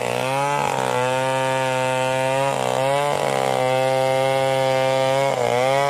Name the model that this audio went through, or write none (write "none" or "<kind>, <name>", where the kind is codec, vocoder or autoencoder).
none